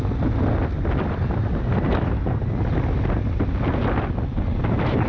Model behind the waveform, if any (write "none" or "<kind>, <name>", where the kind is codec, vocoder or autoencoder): none